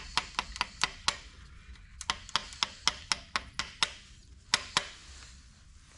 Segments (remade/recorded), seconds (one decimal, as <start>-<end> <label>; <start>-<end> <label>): 0.0-6.0 recorded